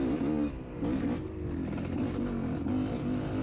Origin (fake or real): real